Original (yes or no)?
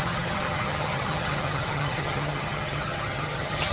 no